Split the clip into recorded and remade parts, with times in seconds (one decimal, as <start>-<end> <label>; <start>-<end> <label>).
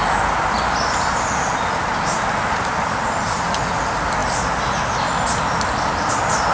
0.0-6.5 recorded